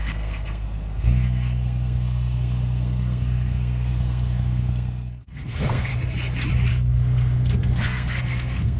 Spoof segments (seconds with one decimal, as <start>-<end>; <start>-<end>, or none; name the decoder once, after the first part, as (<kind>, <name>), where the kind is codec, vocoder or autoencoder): 0.0-5.9 (codec, SNAC); 6.7-8.8